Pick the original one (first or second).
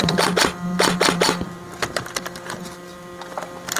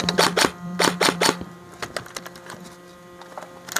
second